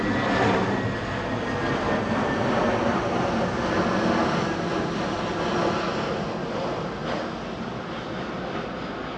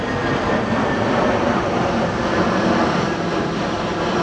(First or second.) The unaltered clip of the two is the first